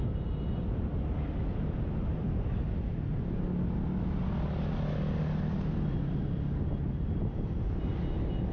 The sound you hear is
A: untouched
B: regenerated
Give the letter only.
A